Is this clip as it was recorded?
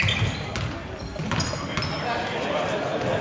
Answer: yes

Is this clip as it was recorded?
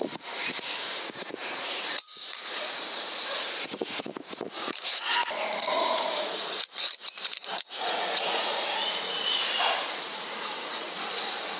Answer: no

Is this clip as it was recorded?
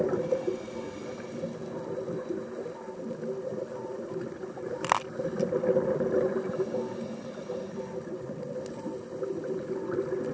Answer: yes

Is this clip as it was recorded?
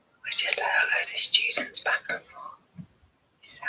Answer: yes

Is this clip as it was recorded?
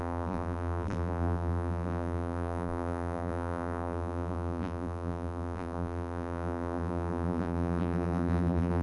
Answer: no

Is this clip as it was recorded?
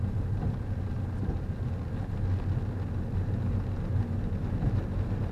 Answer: yes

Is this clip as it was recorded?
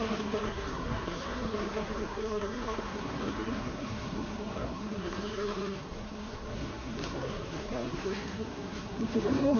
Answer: no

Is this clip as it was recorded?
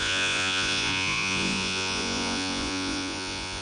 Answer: no